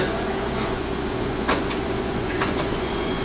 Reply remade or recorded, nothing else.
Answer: remade